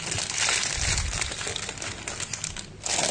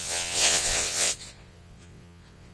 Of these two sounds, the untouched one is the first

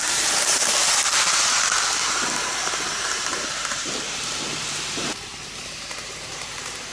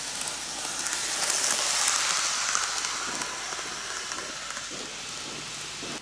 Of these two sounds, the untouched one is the second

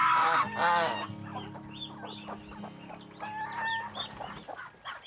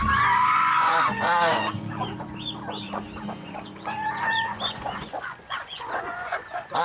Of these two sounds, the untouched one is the first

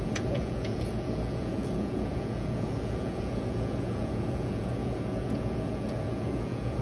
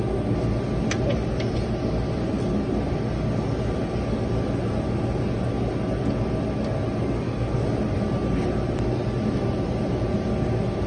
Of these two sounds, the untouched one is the second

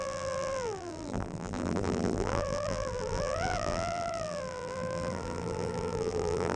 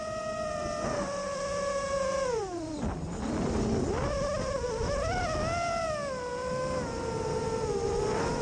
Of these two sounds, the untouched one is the second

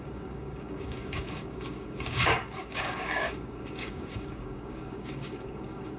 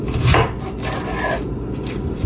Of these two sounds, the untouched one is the second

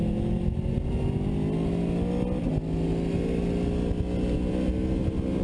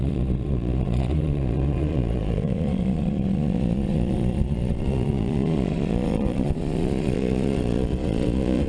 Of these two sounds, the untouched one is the first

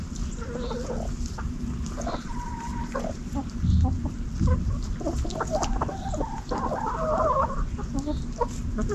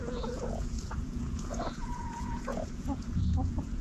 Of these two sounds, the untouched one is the first